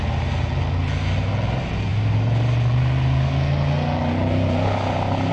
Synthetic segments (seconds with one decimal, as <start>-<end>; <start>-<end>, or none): none